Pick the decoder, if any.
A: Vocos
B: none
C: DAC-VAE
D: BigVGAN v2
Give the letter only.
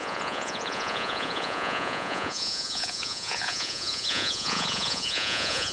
A